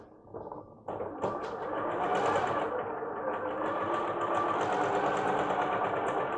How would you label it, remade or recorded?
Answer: recorded